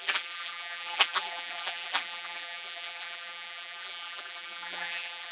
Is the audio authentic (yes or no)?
no